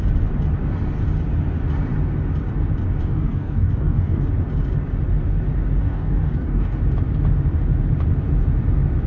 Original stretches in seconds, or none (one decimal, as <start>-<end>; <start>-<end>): 0.0-3.0; 4.3-5.8; 6.8-9.1